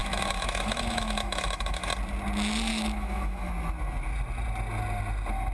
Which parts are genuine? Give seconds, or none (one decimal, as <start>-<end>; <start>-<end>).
1.9-2.7; 3.5-5.5